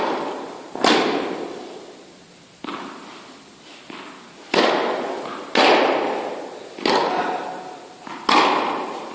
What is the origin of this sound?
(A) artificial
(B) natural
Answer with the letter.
B